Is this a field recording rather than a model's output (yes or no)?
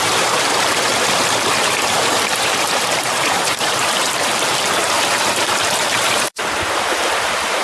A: no